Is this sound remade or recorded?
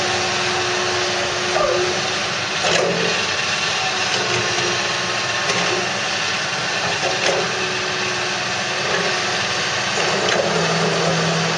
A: recorded